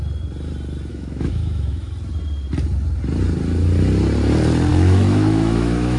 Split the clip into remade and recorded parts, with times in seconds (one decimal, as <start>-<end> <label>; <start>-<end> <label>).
0.0-0.9 recorded; 0.9-1.9 remade; 1.9-4.7 recorded; 4.7-6.0 remade